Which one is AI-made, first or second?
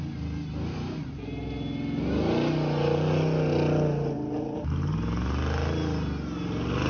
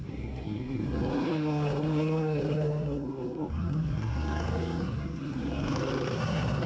second